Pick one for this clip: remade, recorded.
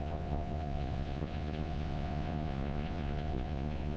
remade